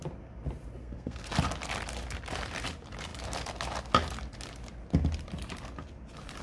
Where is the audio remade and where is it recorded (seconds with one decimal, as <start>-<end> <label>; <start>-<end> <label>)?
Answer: 0.0-0.8 recorded; 0.8-1.3 remade; 1.3-6.4 recorded